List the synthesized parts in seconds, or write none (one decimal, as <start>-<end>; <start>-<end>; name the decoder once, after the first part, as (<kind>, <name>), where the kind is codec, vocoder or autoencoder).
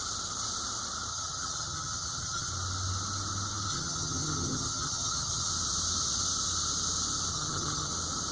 1.1-2.5 (vocoder, HiFi-GAN); 3.7-5.5; 7.3-7.9